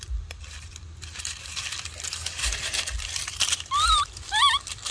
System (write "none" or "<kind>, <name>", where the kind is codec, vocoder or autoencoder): vocoder, BigVGAN v2